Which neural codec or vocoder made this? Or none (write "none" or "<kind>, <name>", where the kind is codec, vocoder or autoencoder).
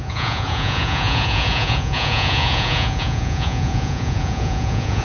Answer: vocoder, Vocos